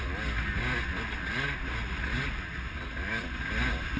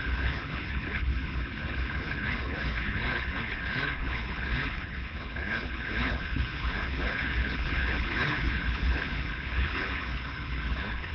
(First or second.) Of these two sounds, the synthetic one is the second